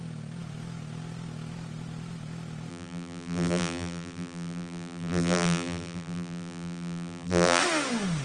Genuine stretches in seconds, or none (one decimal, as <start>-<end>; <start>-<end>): 0.0-2.7; 7.6-8.2

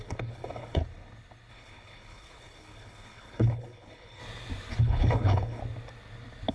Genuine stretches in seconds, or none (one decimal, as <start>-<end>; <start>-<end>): 0.8-1.5; 4.2-4.8; 5.6-6.5

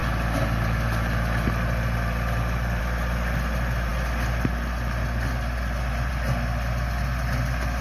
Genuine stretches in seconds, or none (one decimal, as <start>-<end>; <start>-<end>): 0.0-7.8

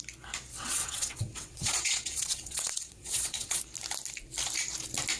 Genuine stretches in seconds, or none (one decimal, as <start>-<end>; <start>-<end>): 0.0-0.5; 3.6-5.2